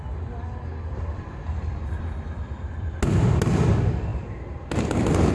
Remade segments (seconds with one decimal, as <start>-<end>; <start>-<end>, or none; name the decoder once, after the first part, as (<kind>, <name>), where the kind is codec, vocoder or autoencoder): 0.7-2.8 (vocoder, BigVGAN v2); 4.1-4.7